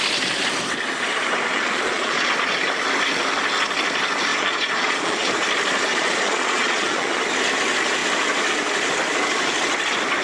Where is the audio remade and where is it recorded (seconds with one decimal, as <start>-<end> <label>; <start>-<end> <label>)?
0.0-1.5 recorded; 1.5-2.3 remade; 2.3-4.3 recorded; 4.3-5.3 remade; 5.3-5.9 recorded; 5.9-7.2 remade; 7.2-10.2 recorded